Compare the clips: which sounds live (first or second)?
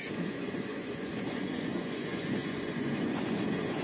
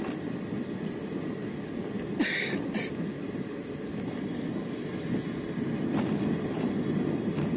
second